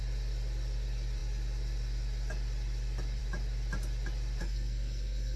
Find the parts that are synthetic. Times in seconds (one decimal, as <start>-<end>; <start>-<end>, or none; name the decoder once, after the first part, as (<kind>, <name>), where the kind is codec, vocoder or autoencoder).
4.4-5.4 (codec, SNAC)